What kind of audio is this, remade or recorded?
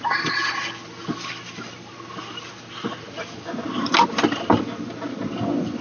recorded